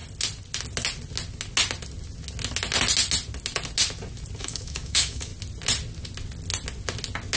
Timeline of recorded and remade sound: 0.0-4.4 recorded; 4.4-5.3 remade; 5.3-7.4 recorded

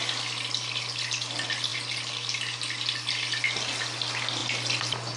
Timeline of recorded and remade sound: 0.0-5.2 recorded

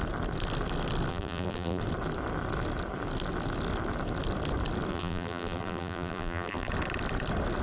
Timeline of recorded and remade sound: 0.0-1.1 recorded; 1.1-1.8 remade; 1.8-4.9 recorded; 4.9-6.7 remade; 6.7-7.6 recorded

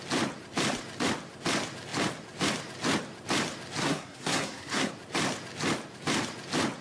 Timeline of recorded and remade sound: 0.0-3.8 recorded; 3.8-4.9 remade; 4.9-6.8 recorded